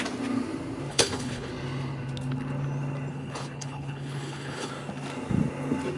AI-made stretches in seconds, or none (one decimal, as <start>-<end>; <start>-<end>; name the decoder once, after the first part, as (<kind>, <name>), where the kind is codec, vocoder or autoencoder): 0.9-1.5 (codec, HILCodec); 3.1-4.7